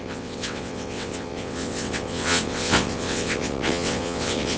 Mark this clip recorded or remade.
remade